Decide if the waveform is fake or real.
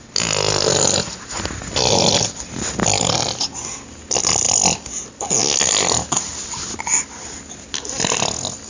real